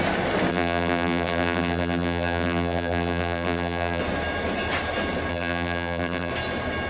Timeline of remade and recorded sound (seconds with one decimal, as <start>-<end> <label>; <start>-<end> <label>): 0.0-0.5 recorded; 0.5-4.0 remade; 4.0-5.3 recorded; 5.3-6.3 remade; 6.3-6.9 recorded

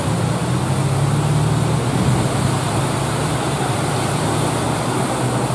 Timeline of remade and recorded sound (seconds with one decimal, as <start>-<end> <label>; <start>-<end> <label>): 0.0-0.4 remade; 0.4-1.9 recorded; 1.9-5.5 remade

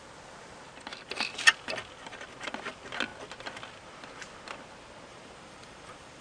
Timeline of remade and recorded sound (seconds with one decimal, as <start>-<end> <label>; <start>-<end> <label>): 0.0-5.1 recorded; 5.1-6.2 remade

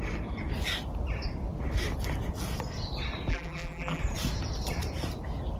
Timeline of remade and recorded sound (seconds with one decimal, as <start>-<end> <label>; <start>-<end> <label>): 0.0-3.3 recorded; 3.3-4.0 remade; 4.0-5.6 recorded

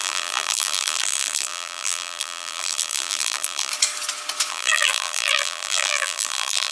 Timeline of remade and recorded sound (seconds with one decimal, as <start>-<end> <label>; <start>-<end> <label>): 0.0-3.7 remade; 3.7-4.5 recorded; 4.5-6.7 remade

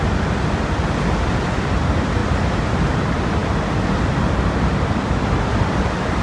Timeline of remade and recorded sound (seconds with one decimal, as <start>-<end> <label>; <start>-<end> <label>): 0.0-6.2 recorded

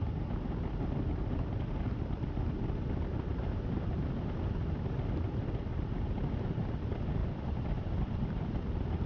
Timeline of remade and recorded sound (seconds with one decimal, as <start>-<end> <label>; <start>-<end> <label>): 0.0-3.3 recorded; 3.3-4.0 remade; 4.0-7.2 recorded; 7.2-8.5 remade; 8.5-9.1 recorded